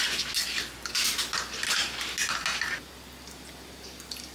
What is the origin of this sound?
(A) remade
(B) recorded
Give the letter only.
B